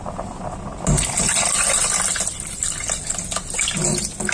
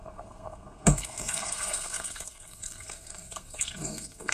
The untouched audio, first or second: first